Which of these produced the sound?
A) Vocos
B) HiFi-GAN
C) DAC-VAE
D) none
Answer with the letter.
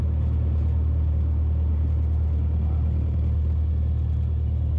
D